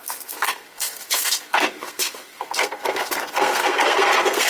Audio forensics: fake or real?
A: fake